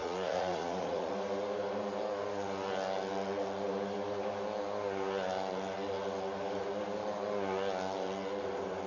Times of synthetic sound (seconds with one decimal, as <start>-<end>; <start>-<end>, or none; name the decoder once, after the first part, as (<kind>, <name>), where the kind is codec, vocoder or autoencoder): 0.0-1.1 (vocoder, Vocos)